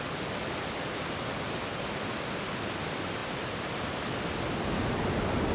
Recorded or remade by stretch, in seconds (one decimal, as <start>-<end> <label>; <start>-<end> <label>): 0.0-3.2 recorded; 3.2-4.0 remade; 4.0-5.5 recorded